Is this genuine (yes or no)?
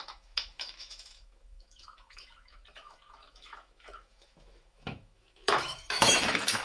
no